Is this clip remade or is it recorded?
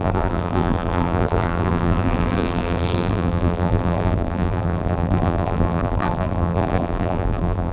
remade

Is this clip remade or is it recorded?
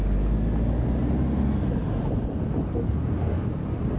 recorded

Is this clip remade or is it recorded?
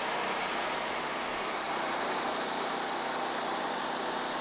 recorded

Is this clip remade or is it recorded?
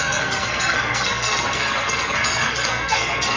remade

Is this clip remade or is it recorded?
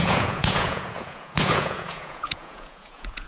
remade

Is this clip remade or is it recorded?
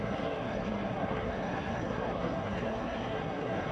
remade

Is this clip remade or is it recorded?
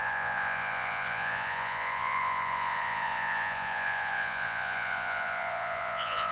remade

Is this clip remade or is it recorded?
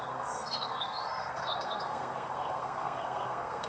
remade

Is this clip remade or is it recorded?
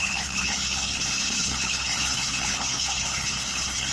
remade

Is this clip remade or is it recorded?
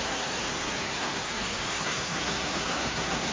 remade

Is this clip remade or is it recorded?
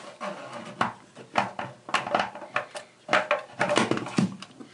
recorded